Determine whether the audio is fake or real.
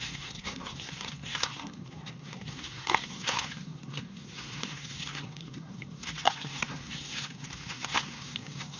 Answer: fake